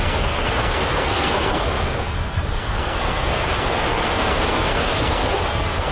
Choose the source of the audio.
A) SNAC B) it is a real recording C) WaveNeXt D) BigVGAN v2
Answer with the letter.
A